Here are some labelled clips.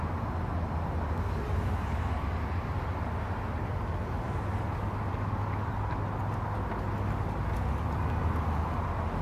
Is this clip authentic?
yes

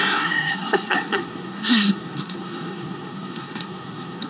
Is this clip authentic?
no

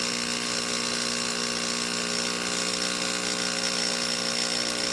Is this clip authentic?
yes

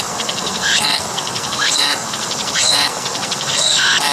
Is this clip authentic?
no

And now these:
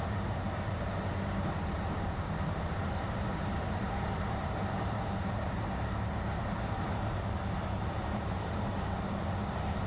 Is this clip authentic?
no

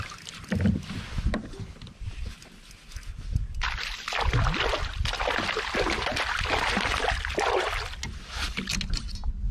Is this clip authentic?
yes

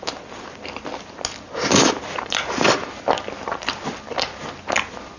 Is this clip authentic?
yes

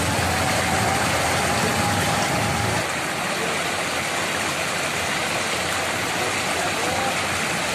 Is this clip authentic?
yes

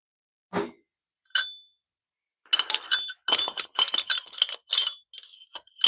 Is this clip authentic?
yes